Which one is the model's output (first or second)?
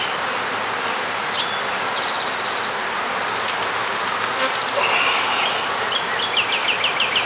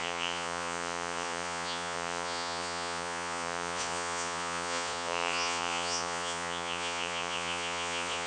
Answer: second